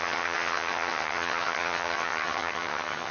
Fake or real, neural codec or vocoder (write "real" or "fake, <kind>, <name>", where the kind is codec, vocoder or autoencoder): fake, vocoder, HiFi-GAN